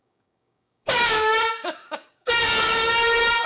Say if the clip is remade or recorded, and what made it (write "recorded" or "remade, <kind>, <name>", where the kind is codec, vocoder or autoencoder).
remade, codec, DAC